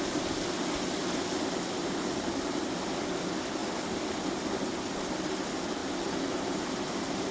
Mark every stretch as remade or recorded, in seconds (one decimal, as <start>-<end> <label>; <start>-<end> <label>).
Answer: 0.0-1.8 recorded; 1.8-2.6 remade; 2.6-5.8 recorded; 5.8-7.3 remade

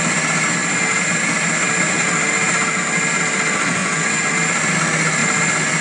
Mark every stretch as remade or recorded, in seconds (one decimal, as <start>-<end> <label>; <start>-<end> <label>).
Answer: 0.0-3.8 recorded; 3.8-4.3 remade; 4.3-5.8 recorded

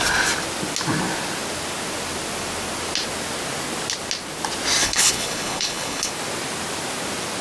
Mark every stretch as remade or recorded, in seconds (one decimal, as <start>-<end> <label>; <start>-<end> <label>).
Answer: 0.0-4.8 recorded; 4.8-6.1 remade; 6.1-7.4 recorded

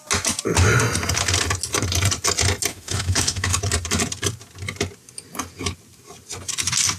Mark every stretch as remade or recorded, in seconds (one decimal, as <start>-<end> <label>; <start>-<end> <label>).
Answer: 0.0-2.7 recorded; 2.7-3.6 remade; 3.6-7.0 recorded

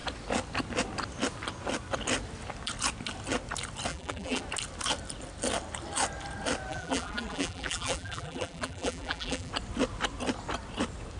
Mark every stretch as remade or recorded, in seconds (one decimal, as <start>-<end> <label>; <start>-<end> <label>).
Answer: 0.0-3.9 recorded; 3.9-4.4 remade; 4.4-6.7 recorded; 6.7-9.5 remade; 9.5-11.2 recorded

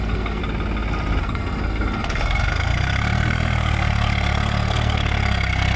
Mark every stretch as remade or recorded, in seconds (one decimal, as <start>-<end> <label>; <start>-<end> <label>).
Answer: 0.0-0.4 remade; 0.4-1.2 recorded; 1.2-5.8 remade

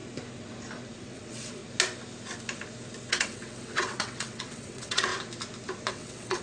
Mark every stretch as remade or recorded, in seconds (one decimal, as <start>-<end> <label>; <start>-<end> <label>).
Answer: 0.0-1.0 recorded; 1.0-1.6 remade; 1.6-3.1 recorded; 3.1-5.1 remade; 5.1-5.9 recorded; 5.9-6.4 remade